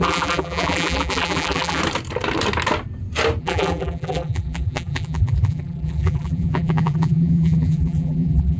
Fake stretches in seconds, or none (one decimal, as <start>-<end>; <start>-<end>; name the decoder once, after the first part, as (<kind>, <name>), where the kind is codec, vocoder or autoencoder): 0.0-1.8 (vocoder, BigVGAN v2); 3.4-8.6